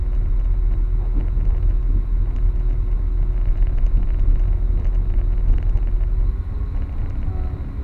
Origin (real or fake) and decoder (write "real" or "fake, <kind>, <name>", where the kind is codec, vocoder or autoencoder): real